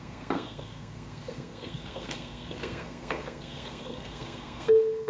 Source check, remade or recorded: remade